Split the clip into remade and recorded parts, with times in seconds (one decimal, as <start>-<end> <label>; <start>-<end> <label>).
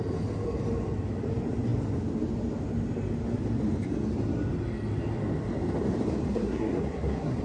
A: 0.0-6.3 recorded; 6.3-7.4 remade